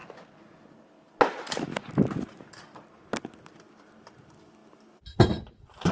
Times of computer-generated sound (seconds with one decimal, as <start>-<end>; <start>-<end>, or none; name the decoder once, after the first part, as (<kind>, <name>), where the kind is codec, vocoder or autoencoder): none